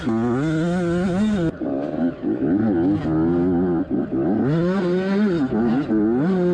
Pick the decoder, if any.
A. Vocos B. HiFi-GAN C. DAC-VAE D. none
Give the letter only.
D